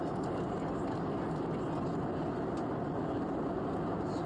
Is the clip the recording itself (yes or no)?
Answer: yes